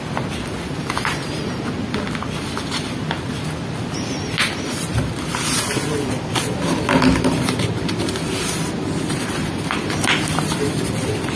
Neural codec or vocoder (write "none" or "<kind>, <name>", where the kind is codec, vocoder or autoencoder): none